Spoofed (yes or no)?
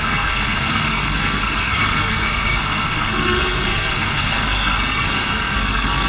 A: yes